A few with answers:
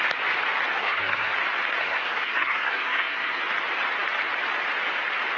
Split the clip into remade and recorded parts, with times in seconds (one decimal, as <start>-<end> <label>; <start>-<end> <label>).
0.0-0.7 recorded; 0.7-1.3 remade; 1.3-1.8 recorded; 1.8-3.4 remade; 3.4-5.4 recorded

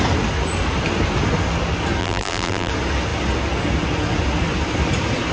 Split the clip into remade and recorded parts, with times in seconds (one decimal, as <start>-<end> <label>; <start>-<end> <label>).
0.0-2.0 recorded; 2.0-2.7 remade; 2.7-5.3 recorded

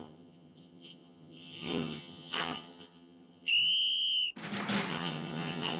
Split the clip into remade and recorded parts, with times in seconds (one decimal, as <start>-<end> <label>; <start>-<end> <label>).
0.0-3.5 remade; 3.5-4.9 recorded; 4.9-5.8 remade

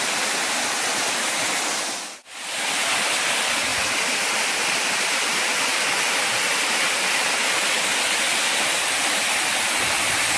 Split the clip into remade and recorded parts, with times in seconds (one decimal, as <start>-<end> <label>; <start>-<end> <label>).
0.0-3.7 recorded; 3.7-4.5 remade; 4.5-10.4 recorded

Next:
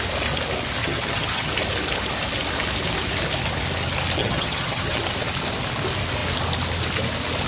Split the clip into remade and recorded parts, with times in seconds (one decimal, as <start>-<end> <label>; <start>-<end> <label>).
0.0-0.8 recorded; 0.8-1.5 remade; 1.5-4.2 recorded; 4.2-5.0 remade; 5.0-7.5 recorded